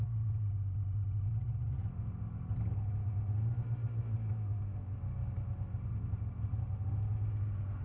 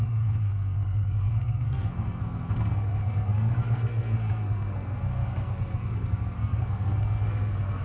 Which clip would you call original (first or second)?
first